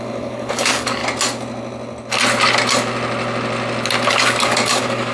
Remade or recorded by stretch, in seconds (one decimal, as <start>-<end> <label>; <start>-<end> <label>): 0.0-1.0 remade; 1.0-4.1 recorded; 4.1-5.1 remade